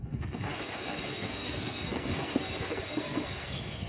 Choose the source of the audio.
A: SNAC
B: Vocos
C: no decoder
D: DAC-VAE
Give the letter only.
A